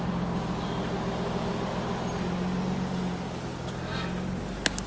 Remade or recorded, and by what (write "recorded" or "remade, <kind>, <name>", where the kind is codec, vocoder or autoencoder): recorded